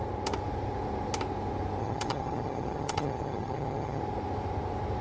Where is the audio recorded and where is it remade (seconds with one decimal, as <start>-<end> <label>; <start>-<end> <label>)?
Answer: 0.0-1.8 recorded; 1.8-4.0 remade; 4.0-5.0 recorded